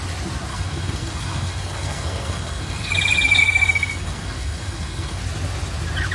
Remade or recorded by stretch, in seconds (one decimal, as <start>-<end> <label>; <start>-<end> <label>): 0.0-0.5 recorded; 0.5-2.9 remade; 2.9-3.4 recorded; 3.4-5.2 remade; 5.2-6.1 recorded